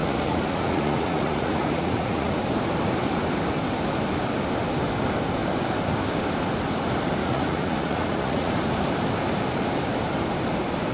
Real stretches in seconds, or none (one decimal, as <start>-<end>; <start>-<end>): 2.3-7.2; 8.5-10.9